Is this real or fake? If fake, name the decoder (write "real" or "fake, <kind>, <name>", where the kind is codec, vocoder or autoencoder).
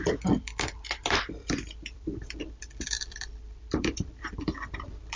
fake, vocoder, BigVGAN v2